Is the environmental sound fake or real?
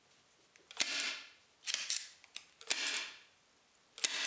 real